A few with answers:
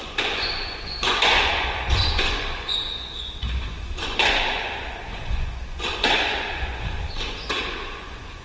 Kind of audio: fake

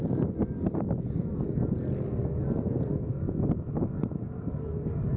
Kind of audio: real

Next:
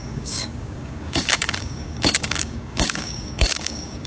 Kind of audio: fake